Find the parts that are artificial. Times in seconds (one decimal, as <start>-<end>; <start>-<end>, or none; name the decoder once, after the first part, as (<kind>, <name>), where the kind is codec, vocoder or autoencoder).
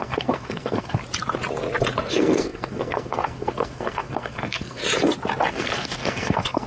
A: 0.0-1.0 (codec, SNAC); 2.1-4.8; 5.5-6.7